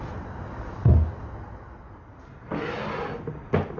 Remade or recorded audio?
recorded